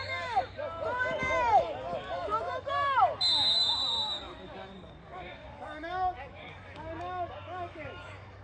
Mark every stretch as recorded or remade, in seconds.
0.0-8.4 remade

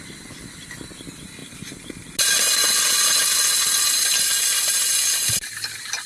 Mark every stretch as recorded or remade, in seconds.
0.0-6.1 recorded